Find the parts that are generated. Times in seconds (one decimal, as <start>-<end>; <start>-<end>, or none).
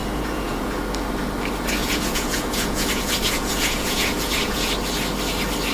0.0-0.7; 1.8-4.7